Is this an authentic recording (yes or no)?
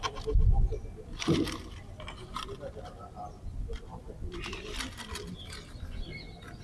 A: yes